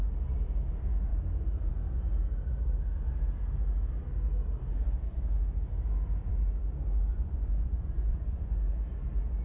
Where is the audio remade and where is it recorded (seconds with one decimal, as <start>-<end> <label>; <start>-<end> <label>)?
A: 0.0-7.1 recorded; 7.1-8.7 remade; 8.7-9.4 recorded

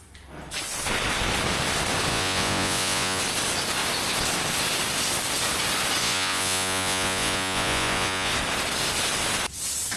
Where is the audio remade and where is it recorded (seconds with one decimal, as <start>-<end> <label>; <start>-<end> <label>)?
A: 0.0-2.1 recorded; 2.1-3.2 remade; 3.2-6.0 recorded; 6.0-8.3 remade; 8.3-10.0 recorded

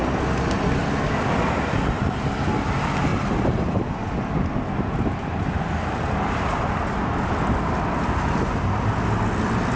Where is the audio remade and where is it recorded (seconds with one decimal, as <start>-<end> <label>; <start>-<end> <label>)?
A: 0.0-9.8 recorded

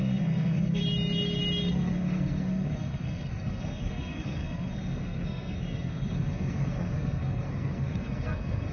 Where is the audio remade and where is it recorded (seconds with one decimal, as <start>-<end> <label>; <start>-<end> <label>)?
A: 0.0-0.8 remade; 0.8-1.7 recorded; 1.7-8.7 remade

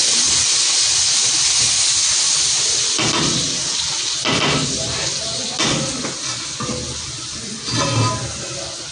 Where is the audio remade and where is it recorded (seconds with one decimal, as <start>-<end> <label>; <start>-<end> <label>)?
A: 0.0-8.9 recorded